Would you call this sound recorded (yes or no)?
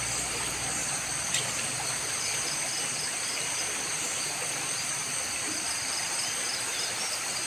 yes